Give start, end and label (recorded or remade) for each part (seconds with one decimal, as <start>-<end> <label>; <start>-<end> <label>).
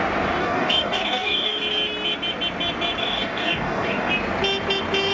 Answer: 0.0-0.4 recorded; 0.4-1.6 remade; 1.6-3.0 recorded; 3.0-4.1 remade; 4.1-5.1 recorded